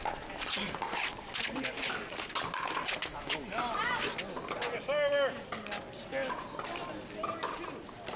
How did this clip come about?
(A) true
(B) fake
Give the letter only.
A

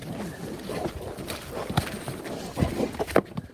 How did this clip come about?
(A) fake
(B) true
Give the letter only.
B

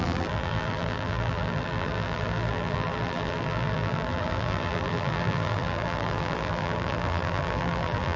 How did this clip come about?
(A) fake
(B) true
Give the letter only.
A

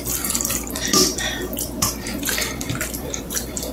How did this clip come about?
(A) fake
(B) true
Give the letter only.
A